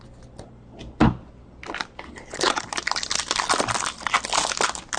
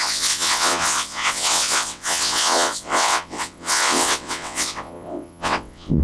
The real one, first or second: first